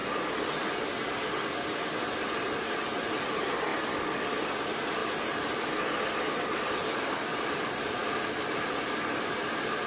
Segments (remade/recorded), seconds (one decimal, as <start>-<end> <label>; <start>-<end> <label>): 0.0-9.9 recorded